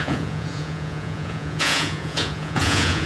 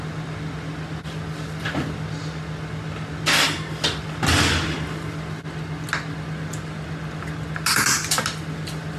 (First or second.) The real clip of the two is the second